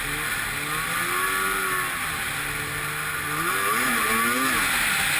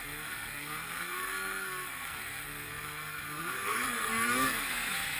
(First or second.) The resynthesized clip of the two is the second